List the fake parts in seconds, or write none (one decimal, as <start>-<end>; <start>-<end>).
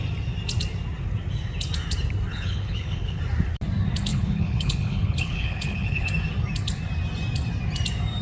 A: 2.3-3.2; 4.1-6.1